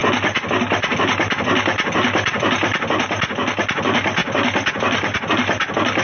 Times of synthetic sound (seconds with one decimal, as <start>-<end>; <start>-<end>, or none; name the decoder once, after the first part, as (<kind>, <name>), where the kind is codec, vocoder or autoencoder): none